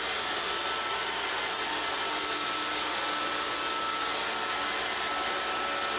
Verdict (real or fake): real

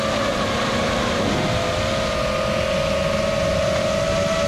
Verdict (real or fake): real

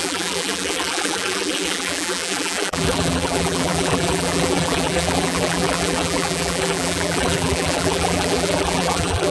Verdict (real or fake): fake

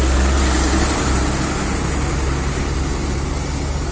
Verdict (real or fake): real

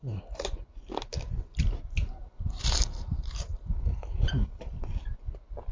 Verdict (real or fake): fake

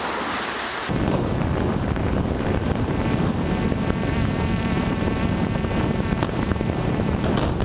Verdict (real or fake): fake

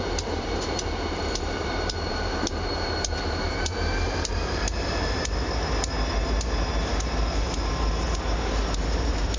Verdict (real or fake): fake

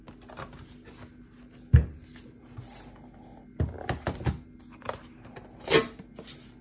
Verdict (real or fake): real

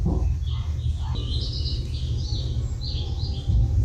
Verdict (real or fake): real